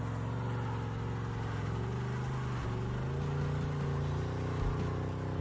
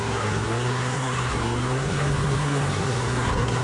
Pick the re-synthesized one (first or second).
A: second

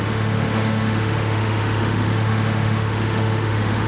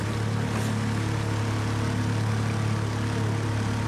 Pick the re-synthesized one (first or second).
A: first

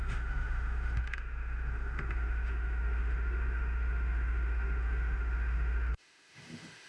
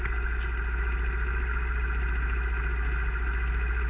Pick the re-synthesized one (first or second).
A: first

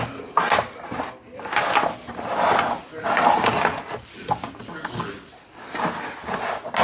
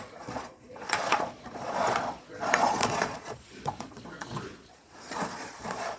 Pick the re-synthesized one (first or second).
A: second